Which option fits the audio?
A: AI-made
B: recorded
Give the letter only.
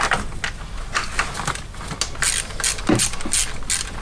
B